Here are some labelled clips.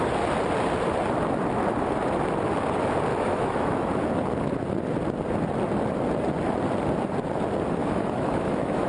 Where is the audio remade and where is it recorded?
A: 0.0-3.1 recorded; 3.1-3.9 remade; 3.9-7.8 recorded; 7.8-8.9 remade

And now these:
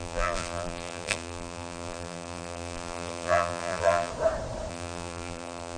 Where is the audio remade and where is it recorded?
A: 0.0-4.1 remade; 4.1-4.7 recorded; 4.7-5.8 remade

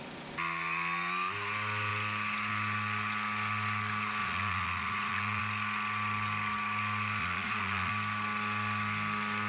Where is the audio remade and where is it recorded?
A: 0.0-4.2 recorded; 4.2-5.4 remade; 5.4-7.2 recorded; 7.2-7.9 remade; 7.9-9.5 recorded

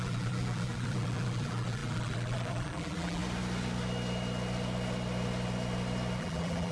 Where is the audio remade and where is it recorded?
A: 0.0-3.2 remade; 3.2-6.2 recorded; 6.2-6.7 remade